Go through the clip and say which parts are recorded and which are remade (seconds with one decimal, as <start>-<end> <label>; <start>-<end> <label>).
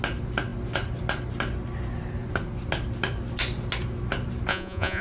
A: 0.0-4.5 recorded; 4.5-5.0 remade